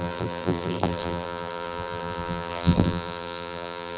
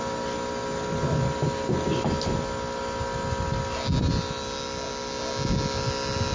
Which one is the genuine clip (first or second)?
second